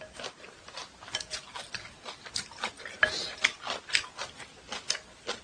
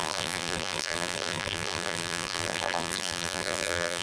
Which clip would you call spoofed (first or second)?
second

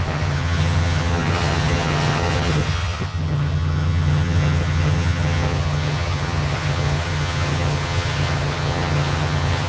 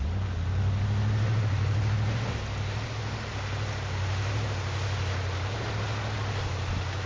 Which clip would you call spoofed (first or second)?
first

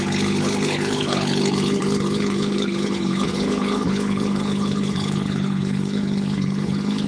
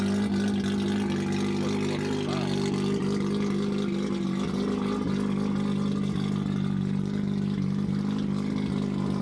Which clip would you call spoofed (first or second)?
first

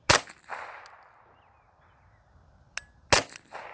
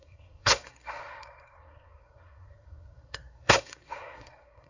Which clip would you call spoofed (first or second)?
second